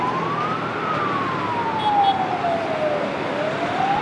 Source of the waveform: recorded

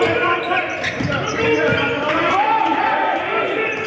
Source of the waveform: recorded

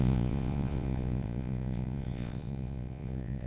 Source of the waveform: remade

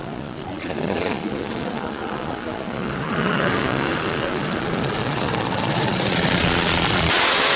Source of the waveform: remade